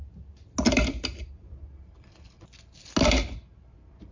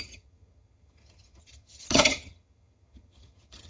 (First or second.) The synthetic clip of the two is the second